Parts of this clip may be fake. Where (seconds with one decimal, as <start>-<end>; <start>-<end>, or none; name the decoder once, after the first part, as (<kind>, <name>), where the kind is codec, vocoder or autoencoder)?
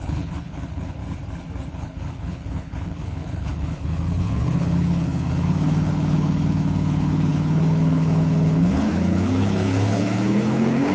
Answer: 0.0-1.0 (codec, HILCodec); 1.7-10.9